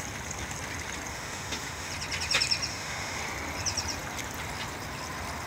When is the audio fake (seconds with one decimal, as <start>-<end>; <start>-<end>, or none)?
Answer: 1.1-1.9; 2.7-3.2